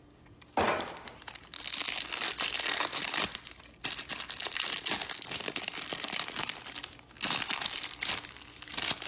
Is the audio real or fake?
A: real